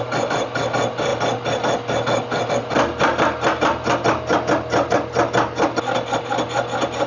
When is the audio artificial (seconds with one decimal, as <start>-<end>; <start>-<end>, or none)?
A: none